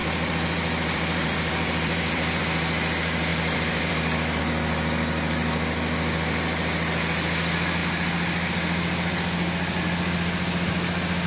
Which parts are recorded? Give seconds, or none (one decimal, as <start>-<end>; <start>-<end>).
2.4-3.3; 4.4-11.3